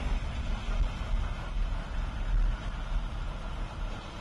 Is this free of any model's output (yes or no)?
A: yes